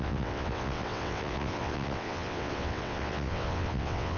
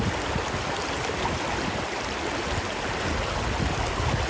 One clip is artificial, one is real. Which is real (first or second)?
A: second